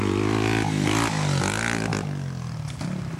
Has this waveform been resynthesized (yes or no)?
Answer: no